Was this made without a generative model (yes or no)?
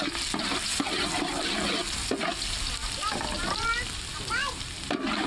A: yes